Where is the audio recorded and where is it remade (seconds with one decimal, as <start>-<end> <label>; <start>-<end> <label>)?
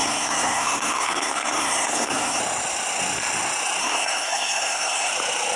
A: 0.0-2.4 remade; 2.4-3.8 recorded; 3.8-5.1 remade; 5.1-5.6 recorded